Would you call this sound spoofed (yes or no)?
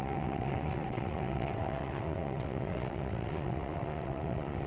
yes